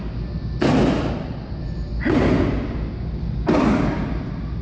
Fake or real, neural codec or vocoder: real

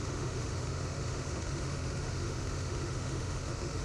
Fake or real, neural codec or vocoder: fake, autoencoder, DAC-VAE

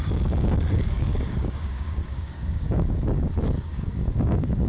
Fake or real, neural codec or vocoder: fake, codec, DAC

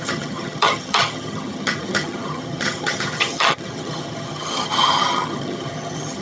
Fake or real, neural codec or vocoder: fake, vocoder, HiFi-GAN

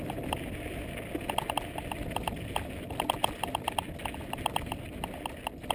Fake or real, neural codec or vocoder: real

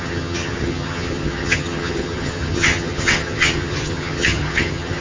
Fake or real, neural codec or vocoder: fake, vocoder, HiFi-GAN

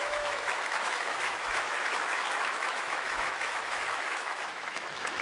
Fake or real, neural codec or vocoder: fake, autoencoder, DAC-VAE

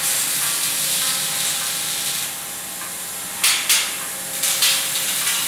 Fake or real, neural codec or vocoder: real